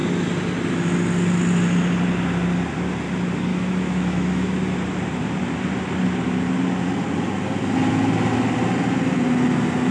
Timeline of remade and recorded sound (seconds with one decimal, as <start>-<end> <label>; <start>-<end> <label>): 0.0-3.5 recorded; 3.5-4.6 remade; 4.6-9.9 recorded